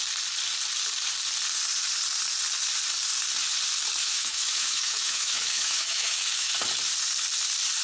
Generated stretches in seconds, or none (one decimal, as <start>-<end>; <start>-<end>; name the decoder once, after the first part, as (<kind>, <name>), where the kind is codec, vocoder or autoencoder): 4.0-6.5 (autoencoder, DAC-VAE)